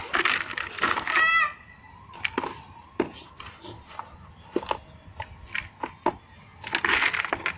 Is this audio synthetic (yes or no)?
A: no